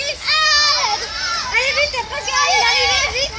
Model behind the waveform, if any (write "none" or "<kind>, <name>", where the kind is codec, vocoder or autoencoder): none